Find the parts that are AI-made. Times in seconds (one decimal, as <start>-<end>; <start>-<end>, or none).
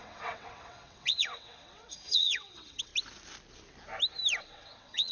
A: 0.0-2.9; 4.4-5.1